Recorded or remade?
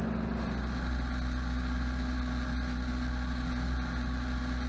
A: recorded